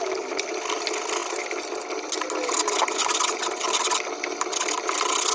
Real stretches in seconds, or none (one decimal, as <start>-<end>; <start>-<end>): 0.0-5.3